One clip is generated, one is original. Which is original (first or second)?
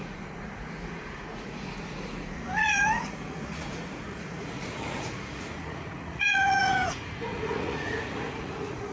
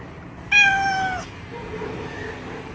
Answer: second